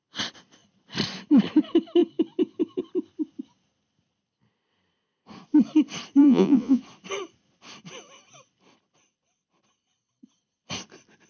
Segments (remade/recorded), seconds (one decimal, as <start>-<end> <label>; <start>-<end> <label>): 0.0-6.2 recorded; 6.2-6.8 remade; 6.8-11.3 recorded